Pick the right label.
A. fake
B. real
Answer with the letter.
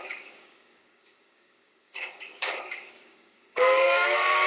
A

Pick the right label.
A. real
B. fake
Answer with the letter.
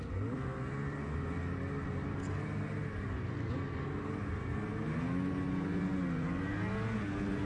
A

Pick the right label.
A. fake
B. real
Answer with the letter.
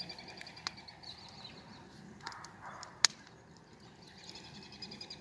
B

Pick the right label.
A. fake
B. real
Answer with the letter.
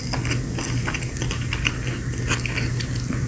B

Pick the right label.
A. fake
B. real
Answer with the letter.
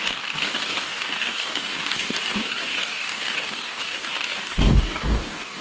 A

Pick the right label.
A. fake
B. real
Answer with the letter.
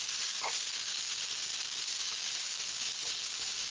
A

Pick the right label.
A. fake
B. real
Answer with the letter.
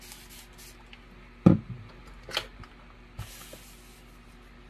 B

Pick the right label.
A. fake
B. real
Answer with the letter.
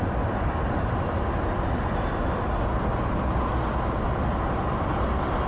B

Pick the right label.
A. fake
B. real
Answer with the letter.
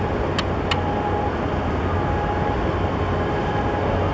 B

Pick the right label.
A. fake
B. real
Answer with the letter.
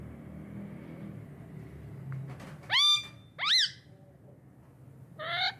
B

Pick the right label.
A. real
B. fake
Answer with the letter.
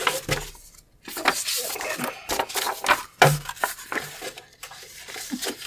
A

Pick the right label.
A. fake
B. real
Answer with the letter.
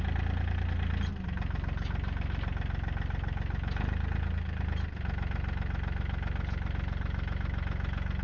B